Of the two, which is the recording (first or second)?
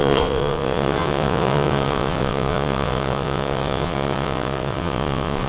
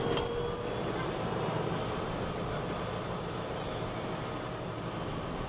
second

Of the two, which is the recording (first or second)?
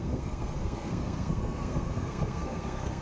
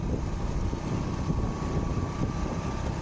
second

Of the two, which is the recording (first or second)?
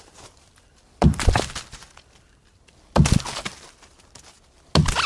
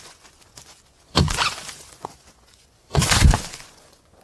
first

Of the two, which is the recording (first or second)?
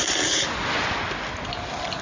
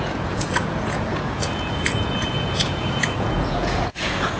first